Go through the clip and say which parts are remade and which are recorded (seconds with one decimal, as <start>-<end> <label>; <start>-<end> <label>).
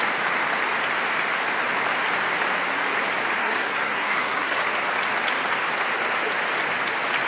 0.0-3.4 recorded; 3.4-4.6 remade; 4.6-7.3 recorded